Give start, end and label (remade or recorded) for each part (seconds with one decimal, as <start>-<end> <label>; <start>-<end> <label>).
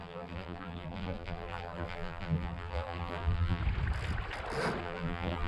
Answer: 0.0-3.6 remade; 3.6-4.8 recorded; 4.8-5.5 remade